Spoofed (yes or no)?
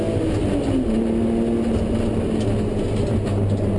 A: no